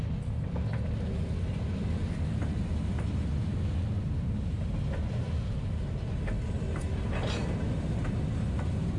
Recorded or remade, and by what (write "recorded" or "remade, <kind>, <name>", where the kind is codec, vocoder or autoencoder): recorded